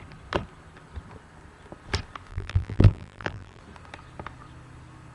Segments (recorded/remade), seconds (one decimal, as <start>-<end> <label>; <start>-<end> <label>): 0.0-2.3 recorded; 2.3-3.6 remade; 3.6-5.1 recorded